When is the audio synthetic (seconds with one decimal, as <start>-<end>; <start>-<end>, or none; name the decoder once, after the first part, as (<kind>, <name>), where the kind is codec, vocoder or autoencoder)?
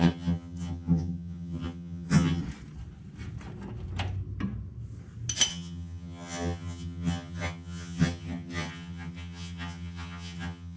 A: 0.0-2.4 (vocoder, HiFi-GAN); 5.5-10.8